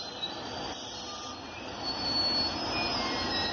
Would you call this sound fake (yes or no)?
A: no